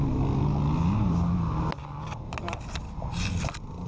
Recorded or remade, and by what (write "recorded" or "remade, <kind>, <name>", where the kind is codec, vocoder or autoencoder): recorded